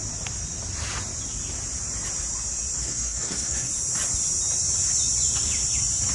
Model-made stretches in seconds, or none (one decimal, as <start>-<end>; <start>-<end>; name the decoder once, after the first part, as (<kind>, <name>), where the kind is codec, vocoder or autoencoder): 2.8-3.7 (codec, SNAC)